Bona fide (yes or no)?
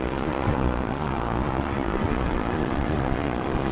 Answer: no